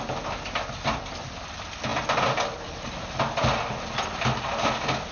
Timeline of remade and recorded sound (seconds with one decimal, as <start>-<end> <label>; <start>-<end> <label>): 0.0-5.1 recorded